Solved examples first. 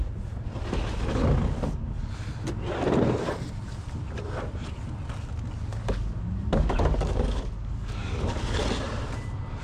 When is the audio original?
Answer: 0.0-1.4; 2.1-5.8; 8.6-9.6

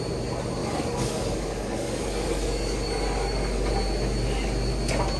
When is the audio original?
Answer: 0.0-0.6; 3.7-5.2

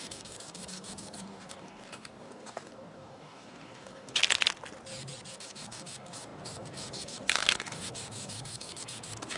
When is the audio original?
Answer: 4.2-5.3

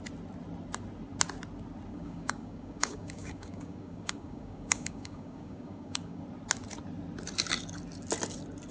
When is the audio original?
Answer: 0.0-1.9; 6.2-8.7